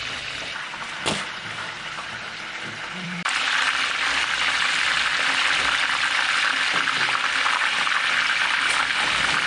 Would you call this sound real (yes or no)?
no